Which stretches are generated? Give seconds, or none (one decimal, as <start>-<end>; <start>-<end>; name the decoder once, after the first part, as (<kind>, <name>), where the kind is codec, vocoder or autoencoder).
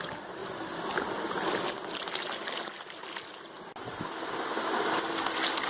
none